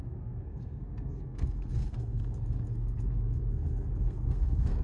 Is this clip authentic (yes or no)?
no